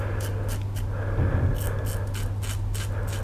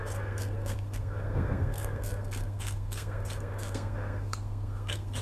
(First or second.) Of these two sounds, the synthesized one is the second